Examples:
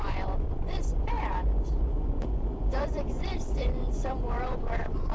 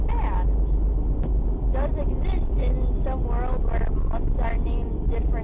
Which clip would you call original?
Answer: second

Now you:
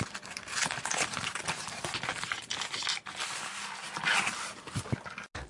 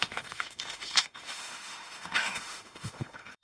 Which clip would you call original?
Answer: first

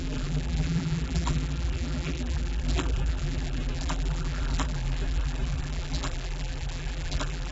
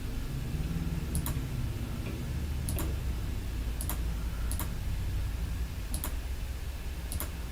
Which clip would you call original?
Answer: second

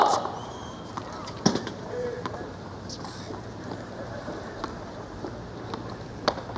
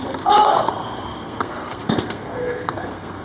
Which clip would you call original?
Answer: first